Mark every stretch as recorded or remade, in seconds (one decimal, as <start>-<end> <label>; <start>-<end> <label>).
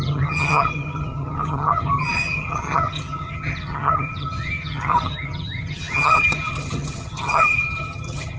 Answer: 0.0-8.4 remade